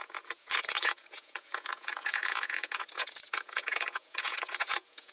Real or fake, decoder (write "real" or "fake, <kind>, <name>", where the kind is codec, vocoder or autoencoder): fake, vocoder, Vocos